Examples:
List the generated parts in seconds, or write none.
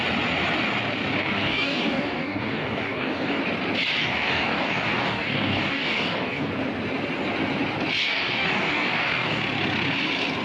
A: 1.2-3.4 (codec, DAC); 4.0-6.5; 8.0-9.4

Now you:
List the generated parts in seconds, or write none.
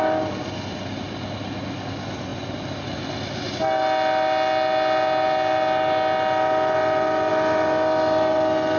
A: none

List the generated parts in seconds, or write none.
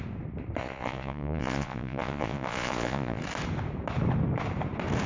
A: 0.6-3.2 (vocoder, Vocos)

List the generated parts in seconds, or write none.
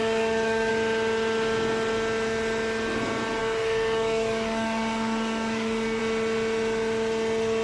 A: 0.0-0.7 (codec, DAC); 3.4-6.0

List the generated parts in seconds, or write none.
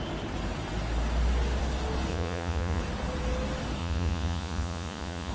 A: 2.1-2.8 (vocoder, Vocos); 3.8-5.3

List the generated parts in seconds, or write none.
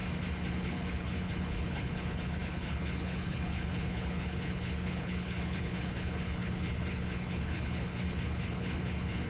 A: 0.5-9.3 (codec, HILCodec)